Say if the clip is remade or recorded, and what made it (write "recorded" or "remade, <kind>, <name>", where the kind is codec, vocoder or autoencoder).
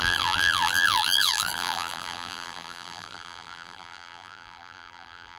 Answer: remade, vocoder, BigVGAN v2